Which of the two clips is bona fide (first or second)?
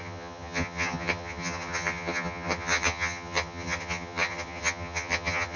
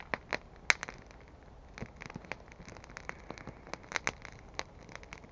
second